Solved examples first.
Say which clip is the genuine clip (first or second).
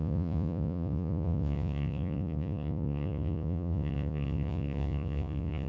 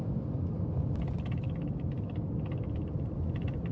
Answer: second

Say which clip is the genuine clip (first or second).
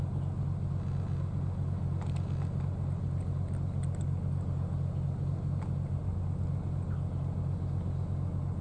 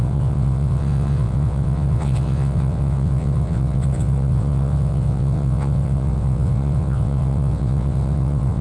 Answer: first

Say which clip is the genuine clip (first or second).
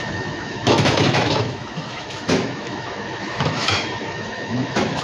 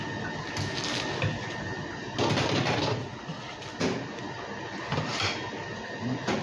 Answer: second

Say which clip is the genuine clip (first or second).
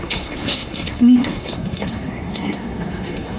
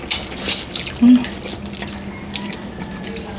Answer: second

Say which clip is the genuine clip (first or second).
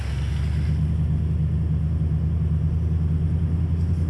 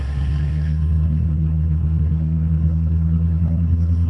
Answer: first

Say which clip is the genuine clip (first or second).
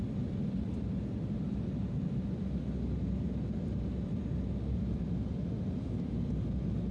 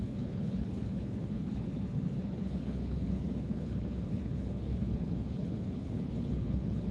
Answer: first